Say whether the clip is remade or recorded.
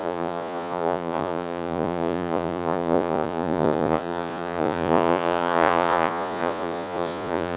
remade